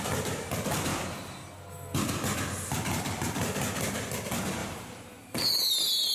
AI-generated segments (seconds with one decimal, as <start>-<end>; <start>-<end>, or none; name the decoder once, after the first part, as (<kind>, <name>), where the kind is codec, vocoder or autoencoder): 4.6-5.5 (vocoder, BigVGAN v2)